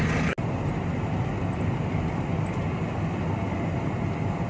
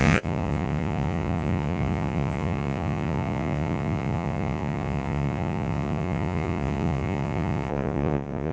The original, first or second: first